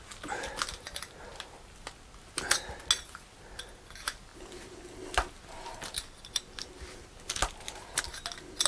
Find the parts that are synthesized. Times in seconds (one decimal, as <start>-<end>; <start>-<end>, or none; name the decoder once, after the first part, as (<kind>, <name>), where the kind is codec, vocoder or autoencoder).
none